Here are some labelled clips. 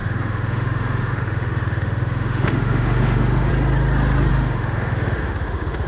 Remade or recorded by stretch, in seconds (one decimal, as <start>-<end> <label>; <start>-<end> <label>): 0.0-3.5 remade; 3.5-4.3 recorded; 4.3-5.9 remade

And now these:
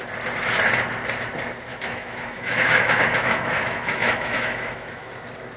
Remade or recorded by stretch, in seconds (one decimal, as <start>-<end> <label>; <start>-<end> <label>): 0.0-1.7 recorded; 1.7-5.1 remade; 5.1-5.6 recorded

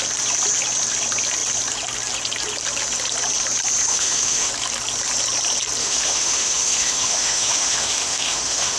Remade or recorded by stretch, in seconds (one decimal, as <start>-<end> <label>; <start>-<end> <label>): 0.0-3.9 recorded; 3.9-4.5 remade; 4.5-5.8 recorded; 5.8-8.8 remade

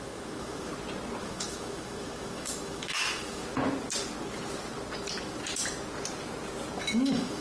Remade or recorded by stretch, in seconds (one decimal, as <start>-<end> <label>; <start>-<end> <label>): 0.0-0.7 remade; 0.7-1.2 recorded; 1.2-3.4 remade; 3.4-6.8 recorded; 6.8-7.4 remade

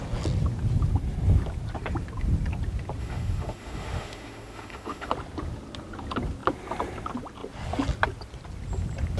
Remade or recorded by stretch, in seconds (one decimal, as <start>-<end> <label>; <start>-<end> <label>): 0.0-3.0 recorded; 3.0-5.1 remade; 5.1-9.2 recorded

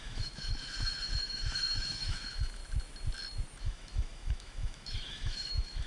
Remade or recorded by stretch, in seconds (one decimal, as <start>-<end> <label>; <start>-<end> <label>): 0.0-2.6 remade; 2.6-3.6 recorded; 3.6-5.9 remade

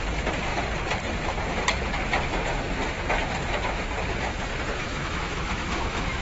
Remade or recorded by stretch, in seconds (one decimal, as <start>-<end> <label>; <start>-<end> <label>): 0.0-4.8 recorded; 4.8-6.2 remade